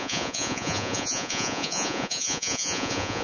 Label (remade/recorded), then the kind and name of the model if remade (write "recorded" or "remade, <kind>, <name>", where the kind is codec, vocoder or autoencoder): remade, vocoder, Vocos